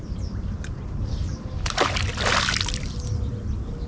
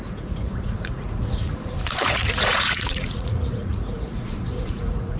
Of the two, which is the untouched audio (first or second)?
first